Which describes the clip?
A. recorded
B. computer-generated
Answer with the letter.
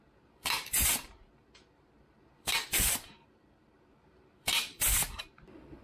B